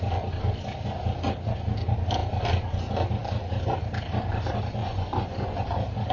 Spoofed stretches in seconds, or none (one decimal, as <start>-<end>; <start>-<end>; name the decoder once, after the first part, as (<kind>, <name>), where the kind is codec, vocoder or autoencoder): 4.8-5.6 (vocoder, Vocos)